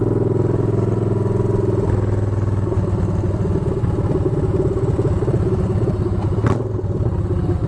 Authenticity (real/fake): real